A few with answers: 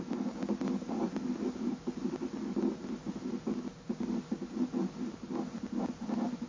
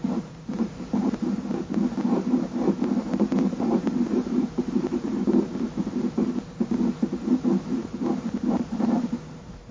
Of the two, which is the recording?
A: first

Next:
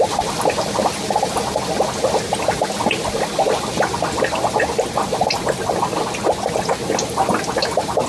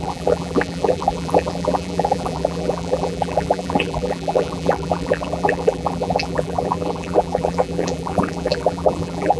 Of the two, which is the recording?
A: first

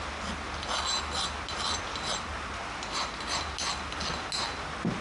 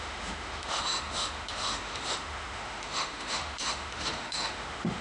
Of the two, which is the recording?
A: first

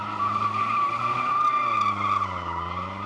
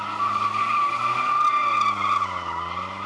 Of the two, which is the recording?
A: second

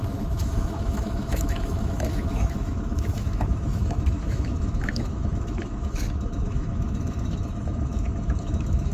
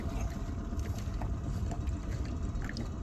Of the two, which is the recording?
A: second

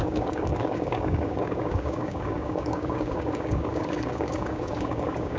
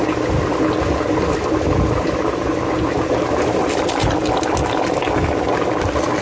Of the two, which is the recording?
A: second